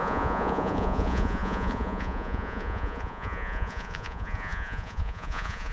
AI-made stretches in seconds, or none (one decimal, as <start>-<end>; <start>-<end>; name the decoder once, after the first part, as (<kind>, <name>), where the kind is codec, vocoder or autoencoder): 0.0-5.7 (vocoder, Vocos)

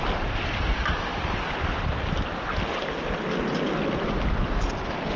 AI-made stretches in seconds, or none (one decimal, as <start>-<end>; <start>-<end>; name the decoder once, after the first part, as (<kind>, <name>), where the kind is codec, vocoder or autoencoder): none

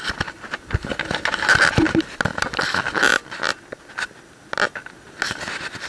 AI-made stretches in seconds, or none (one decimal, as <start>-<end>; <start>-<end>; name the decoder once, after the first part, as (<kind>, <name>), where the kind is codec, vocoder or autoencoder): none

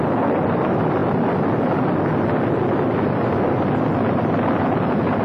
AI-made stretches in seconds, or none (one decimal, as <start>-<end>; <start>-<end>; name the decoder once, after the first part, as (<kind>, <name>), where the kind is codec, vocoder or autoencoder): none

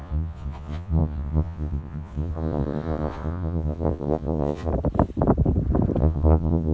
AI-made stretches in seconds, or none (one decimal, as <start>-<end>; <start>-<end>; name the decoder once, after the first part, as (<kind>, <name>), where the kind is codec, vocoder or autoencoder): 0.0-4.7 (vocoder, Vocos); 6.0-6.7

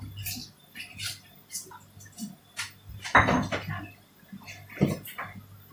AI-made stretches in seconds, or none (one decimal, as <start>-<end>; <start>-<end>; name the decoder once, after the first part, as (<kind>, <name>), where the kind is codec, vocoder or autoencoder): none